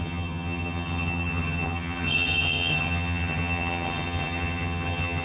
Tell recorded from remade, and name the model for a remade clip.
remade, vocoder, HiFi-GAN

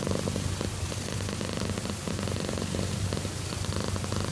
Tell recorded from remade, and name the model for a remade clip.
recorded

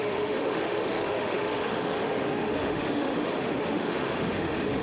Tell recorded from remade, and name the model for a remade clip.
remade, autoencoder, DAC-VAE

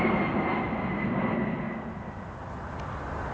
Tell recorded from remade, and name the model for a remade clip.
recorded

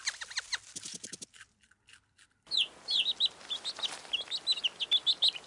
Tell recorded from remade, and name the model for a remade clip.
recorded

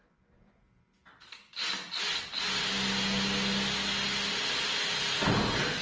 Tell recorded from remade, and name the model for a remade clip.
recorded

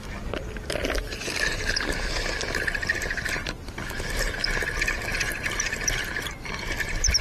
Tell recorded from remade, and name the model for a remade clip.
recorded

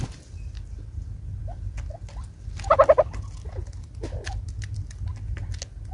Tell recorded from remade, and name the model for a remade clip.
recorded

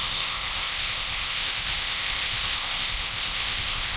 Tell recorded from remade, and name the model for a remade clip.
remade, codec, ZipCodec